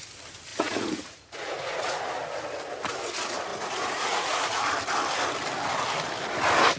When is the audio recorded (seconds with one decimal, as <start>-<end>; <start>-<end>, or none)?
0.0-0.5; 2.1-3.5; 4.6-6.8